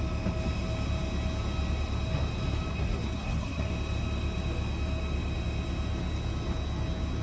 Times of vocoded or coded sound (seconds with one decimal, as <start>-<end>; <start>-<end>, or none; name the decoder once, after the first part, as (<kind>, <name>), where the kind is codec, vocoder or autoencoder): 2.7-3.7 (codec, SNAC)